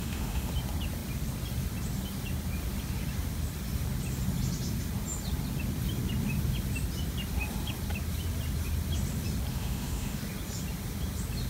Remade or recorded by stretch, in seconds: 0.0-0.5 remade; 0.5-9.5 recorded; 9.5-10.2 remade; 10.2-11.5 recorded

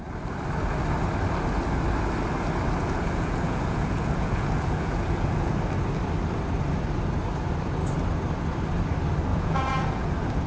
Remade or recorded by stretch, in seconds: 0.0-2.8 recorded; 2.8-5.5 remade; 5.5-9.3 recorded; 9.3-10.1 remade; 10.1-10.5 recorded

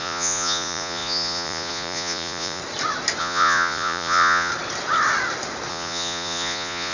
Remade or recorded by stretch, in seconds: 0.0-2.6 remade; 2.6-3.2 recorded; 3.2-4.5 remade; 4.5-5.7 recorded; 5.7-6.9 remade

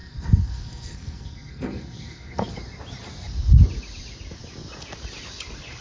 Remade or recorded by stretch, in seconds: 0.0-2.5 remade; 2.5-5.8 recorded

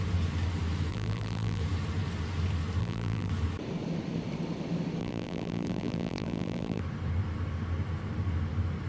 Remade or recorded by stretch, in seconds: 0.0-0.9 recorded; 0.9-1.6 remade; 1.6-2.8 recorded; 2.8-3.3 remade; 3.3-5.0 recorded; 5.0-6.8 remade; 6.8-8.9 recorded

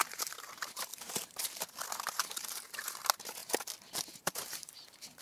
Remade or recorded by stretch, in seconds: 0.0-3.4 remade; 3.4-4.2 recorded; 4.2-5.2 remade

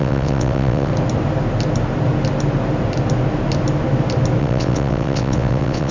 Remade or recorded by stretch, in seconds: 0.0-0.9 remade; 0.9-4.4 recorded; 4.4-5.9 remade

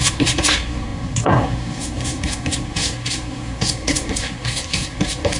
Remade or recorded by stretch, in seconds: 0.0-5.4 remade